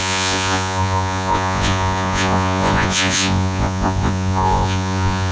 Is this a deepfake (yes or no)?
yes